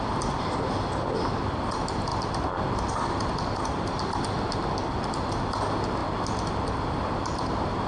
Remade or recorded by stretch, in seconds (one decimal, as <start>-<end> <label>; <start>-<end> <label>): 0.0-7.9 recorded